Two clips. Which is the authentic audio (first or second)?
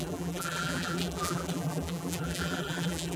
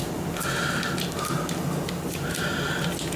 second